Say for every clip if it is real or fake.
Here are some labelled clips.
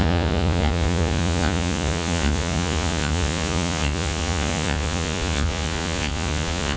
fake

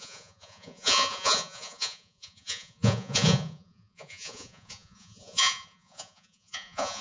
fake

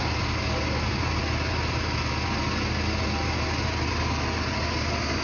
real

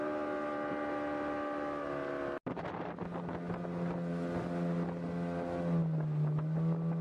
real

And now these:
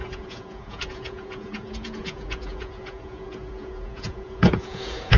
fake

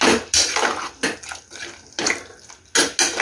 real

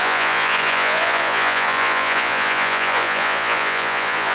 fake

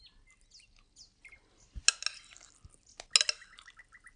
real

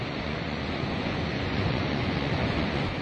fake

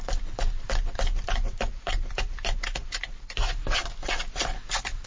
real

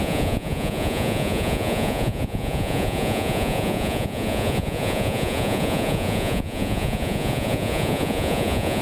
fake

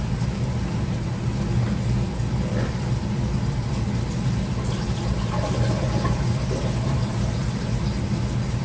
real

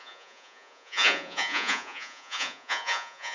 fake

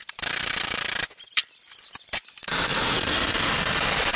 real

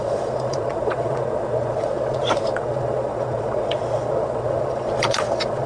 fake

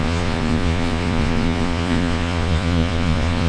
fake